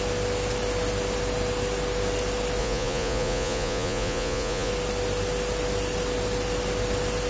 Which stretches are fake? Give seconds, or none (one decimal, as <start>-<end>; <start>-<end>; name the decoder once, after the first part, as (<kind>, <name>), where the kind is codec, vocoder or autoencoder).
2.6-4.7 (vocoder, Vocos)